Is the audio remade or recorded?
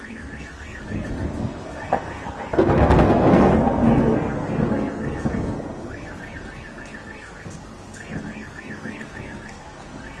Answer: remade